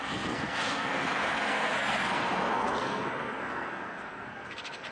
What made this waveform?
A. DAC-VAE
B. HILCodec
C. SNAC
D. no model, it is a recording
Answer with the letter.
C